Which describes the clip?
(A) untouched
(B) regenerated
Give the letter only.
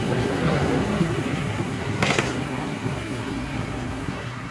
B